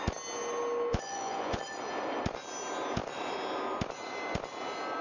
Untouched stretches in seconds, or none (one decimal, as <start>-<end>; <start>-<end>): 0.0-0.9; 1.6-5.0